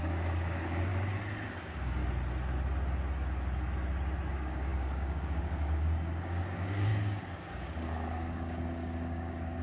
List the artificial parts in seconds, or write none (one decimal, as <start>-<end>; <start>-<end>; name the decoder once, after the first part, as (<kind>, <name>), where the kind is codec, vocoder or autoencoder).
0.0-0.9 (codec, DAC); 1.5-2.0; 4.3-9.6